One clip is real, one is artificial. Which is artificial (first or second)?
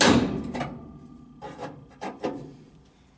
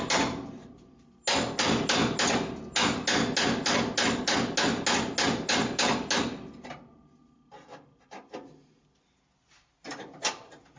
first